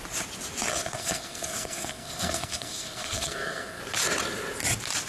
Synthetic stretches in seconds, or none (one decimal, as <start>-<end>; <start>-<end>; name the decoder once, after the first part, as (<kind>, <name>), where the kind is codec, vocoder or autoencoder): 0.7-3.8 (codec, SNAC)